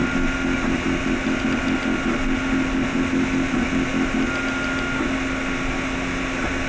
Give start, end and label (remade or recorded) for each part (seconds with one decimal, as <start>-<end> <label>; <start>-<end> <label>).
0.0-6.7 recorded